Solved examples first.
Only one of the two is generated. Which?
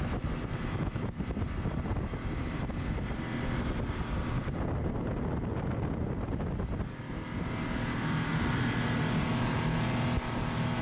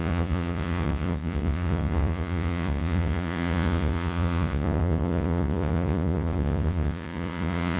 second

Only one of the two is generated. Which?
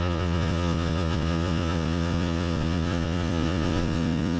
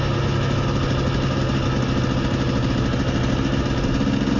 first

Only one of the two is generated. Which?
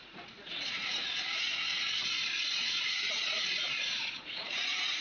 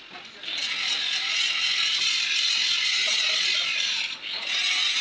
first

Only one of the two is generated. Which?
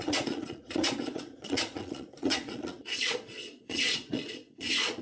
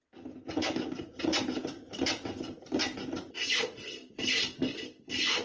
first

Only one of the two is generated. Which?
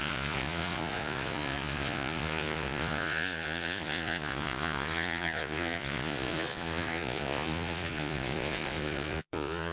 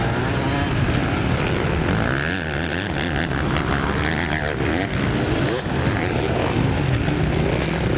first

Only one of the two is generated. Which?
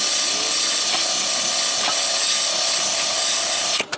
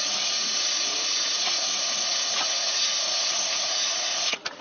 second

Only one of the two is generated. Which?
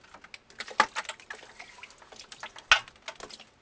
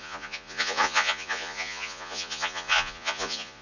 second